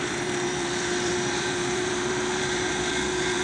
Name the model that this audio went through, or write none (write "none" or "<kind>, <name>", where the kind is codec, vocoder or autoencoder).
vocoder, BigVGAN v2